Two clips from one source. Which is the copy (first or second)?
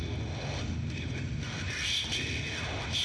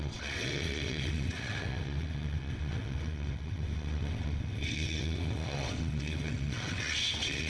second